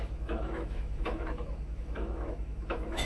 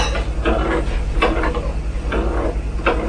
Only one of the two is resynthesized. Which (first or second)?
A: first